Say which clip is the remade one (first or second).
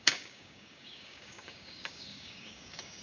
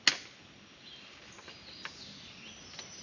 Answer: first